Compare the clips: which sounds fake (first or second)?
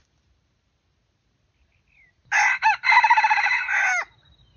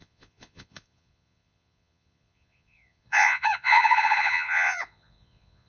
second